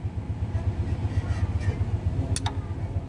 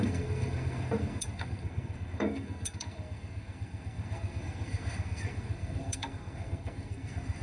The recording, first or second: first